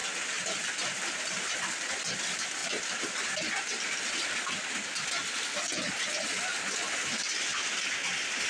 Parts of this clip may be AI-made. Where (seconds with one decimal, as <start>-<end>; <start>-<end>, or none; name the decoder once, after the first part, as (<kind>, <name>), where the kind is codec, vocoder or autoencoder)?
none